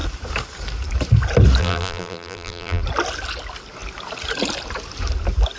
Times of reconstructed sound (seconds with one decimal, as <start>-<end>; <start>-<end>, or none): 1.6-2.8